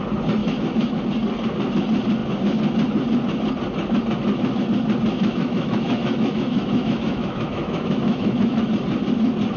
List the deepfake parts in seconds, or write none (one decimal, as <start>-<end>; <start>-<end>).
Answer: 0.4-1.0; 5.1-8.7